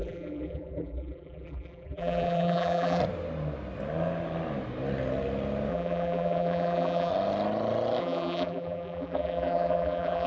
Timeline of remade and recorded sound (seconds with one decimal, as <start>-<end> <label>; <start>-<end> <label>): 0.0-3.0 remade; 3.0-5.7 recorded; 5.7-7.1 remade; 7.1-8.0 recorded; 8.0-10.3 remade